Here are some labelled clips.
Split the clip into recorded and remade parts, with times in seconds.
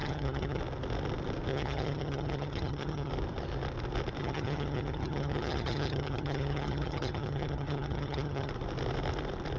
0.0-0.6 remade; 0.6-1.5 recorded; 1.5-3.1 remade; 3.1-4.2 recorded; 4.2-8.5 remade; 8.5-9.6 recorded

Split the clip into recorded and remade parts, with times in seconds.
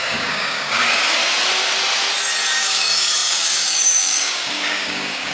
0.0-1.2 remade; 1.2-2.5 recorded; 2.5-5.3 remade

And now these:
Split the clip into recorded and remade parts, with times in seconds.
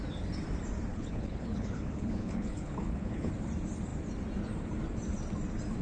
0.0-0.9 recorded; 0.9-3.3 remade; 3.3-5.8 recorded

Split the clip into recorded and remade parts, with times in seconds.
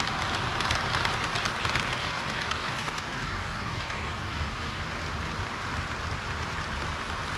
0.0-2.0 recorded; 2.0-4.8 remade; 4.8-7.4 recorded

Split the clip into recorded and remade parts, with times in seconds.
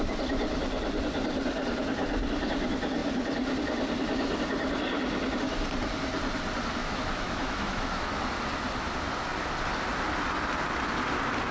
0.0-6.8 recorded; 6.8-8.2 remade; 8.2-11.5 recorded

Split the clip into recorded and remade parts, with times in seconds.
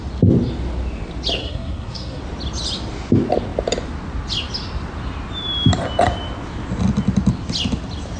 0.0-1.4 recorded; 1.4-2.2 remade; 2.2-8.2 recorded